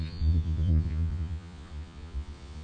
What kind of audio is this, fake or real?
fake